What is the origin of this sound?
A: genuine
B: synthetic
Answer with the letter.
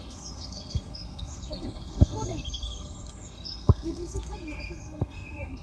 B